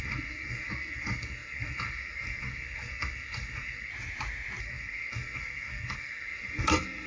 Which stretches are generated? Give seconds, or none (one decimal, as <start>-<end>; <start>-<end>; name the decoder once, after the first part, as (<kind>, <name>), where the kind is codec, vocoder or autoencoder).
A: 0.0-3.9 (codec, SNAC); 4.6-7.1